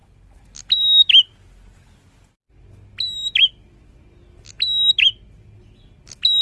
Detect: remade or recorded recorded